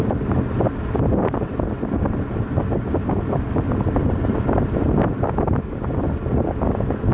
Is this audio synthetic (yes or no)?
no